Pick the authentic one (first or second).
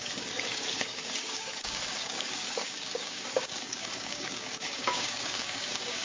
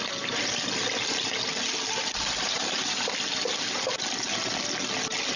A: second